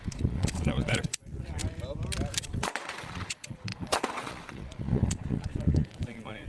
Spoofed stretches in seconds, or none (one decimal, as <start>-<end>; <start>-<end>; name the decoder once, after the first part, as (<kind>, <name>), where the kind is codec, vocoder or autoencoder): 0.0-1.6 (vocoder, Vocos); 2.4-6.5